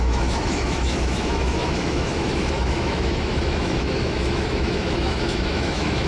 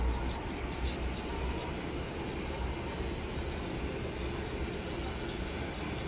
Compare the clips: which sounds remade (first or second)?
first